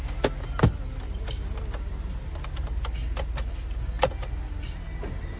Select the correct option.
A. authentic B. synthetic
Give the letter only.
A